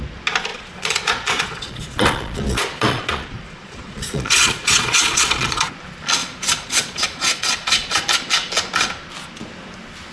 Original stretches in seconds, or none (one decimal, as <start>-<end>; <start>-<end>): 0.0-0.5; 5.7-6.2; 8.0-10.1